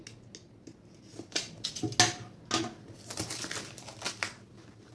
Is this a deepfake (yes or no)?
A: no